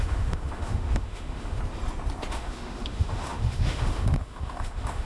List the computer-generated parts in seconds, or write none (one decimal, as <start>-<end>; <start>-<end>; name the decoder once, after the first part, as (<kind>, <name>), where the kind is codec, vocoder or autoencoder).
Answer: 0.0-1.6 (autoencoder, DAC-VAE); 2.3-5.1